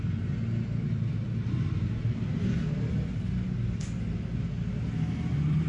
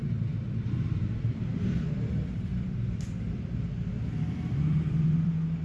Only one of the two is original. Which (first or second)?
first